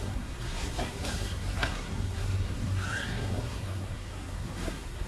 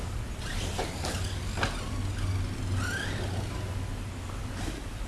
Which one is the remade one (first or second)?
first